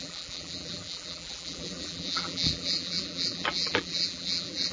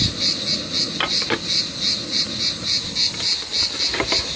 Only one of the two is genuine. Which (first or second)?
second